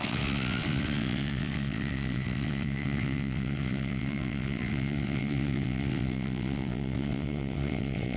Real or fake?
fake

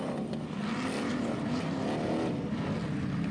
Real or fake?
real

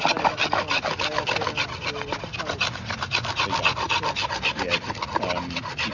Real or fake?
real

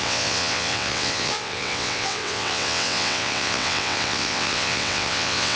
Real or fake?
fake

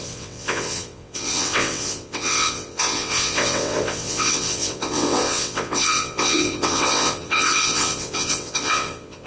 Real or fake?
fake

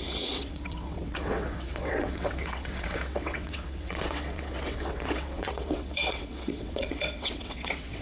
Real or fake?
fake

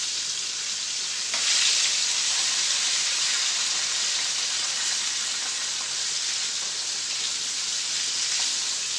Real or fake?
real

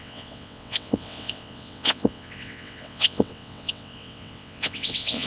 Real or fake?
fake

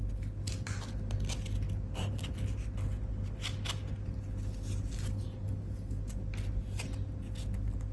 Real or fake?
real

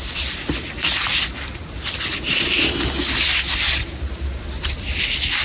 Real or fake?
real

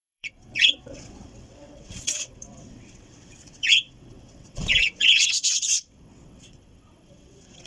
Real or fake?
fake